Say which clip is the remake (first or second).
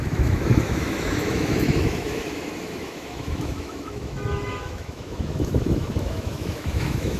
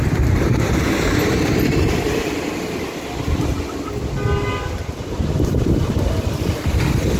first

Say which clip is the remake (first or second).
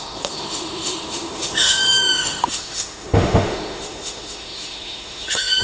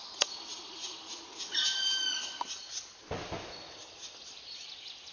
first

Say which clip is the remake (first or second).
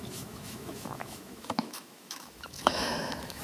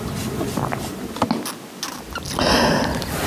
first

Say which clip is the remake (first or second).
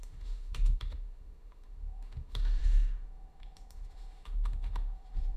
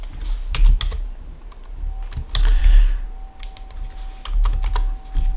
first